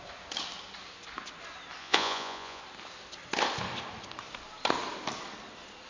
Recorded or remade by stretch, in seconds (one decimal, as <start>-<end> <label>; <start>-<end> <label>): 0.0-1.8 recorded; 1.8-2.6 remade; 2.6-5.9 recorded